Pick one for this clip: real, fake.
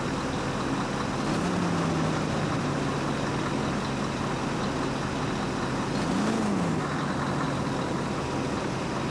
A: real